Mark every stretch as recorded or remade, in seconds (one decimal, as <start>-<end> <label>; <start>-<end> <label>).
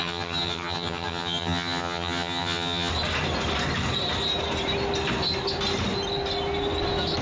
0.0-2.9 remade; 2.9-7.2 recorded